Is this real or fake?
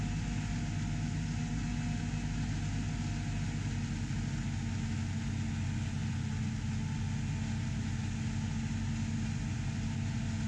real